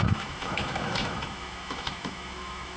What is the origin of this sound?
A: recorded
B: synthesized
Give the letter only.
B